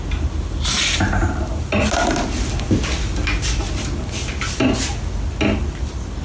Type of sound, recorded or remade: recorded